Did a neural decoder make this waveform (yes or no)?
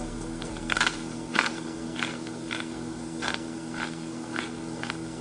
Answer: yes